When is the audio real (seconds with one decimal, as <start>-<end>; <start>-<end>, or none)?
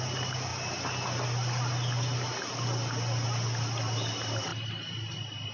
0.0-5.5